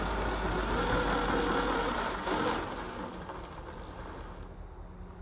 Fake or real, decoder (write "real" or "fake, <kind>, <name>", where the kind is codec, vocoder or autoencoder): real